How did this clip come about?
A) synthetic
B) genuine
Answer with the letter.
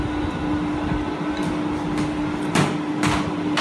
B